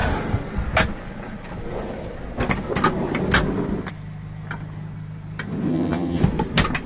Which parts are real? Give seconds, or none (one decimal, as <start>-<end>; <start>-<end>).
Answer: 0.0-5.7; 6.2-6.9